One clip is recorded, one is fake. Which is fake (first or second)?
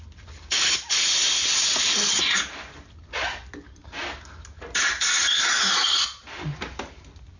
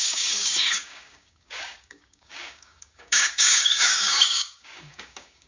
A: second